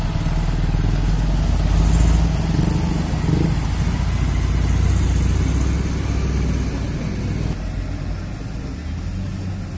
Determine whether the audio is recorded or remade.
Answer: recorded